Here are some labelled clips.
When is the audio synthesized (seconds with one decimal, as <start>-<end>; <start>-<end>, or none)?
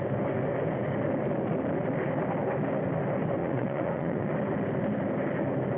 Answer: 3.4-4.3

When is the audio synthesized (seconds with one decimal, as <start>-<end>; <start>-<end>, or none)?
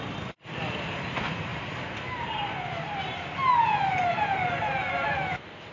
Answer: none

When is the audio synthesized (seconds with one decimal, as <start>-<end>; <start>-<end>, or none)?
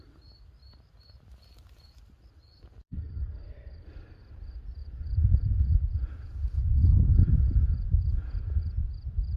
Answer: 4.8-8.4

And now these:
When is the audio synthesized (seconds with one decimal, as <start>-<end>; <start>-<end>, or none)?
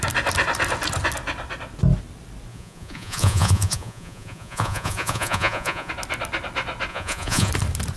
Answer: 2.5-5.9; 6.9-7.5